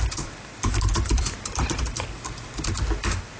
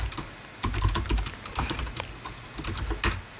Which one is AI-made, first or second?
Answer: first